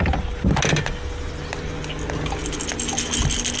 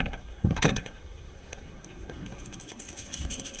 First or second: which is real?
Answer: first